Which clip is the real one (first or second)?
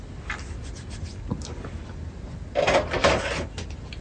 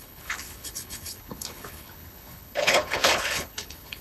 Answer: first